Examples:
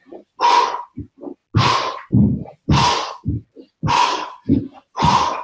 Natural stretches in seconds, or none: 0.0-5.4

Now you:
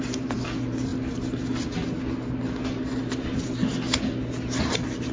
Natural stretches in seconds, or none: 0.0-5.1

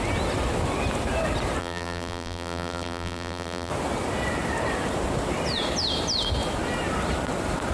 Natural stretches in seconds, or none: 0.0-1.6; 3.7-7.7

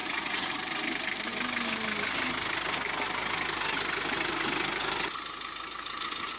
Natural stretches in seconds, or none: 0.5-6.4

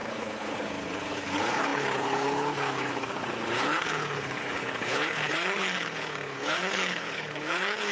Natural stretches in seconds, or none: none

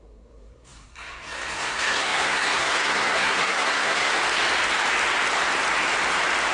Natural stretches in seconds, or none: 4.1-6.5